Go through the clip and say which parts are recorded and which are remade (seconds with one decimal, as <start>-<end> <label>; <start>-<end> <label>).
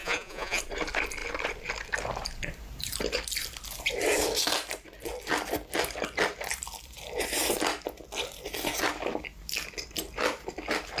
0.0-0.6 remade; 0.6-11.0 recorded